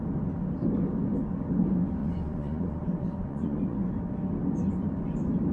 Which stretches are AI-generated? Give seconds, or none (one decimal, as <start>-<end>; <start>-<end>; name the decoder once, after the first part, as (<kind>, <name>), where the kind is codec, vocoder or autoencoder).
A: 2.0-3.9 (vocoder, Vocos)